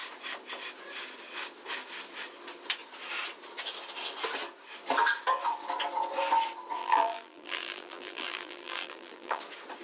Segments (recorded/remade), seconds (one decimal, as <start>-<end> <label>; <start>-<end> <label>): 0.0-6.8 recorded; 6.8-9.4 remade; 9.4-9.8 recorded